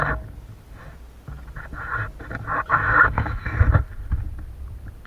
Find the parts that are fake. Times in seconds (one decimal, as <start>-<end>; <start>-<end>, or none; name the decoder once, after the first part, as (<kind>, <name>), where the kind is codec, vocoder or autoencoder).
2.7-3.7 (autoencoder, DAC-VAE)